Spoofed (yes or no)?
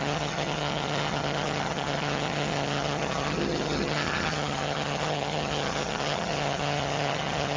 yes